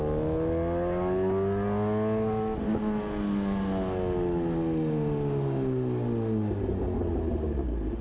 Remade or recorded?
recorded